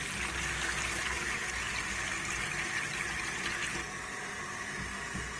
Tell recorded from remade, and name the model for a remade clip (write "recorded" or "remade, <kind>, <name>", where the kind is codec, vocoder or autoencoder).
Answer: recorded